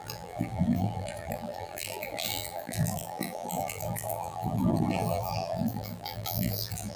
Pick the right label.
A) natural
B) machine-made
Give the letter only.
B